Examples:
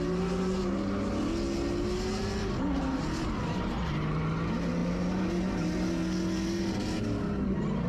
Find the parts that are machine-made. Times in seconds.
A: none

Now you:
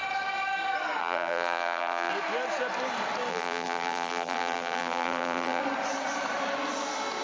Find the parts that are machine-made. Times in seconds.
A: 1.0-2.1; 3.3-5.6

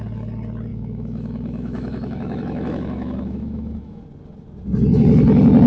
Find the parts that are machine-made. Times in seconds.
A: 0.7-4.0

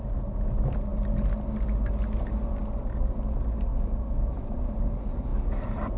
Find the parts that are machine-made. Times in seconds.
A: none